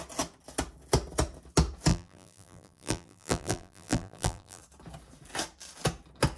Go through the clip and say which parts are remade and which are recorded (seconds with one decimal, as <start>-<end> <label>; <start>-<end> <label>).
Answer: 0.0-1.9 recorded; 1.9-4.6 remade; 4.6-6.4 recorded